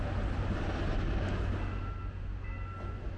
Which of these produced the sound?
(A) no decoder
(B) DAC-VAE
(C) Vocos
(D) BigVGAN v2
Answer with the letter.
A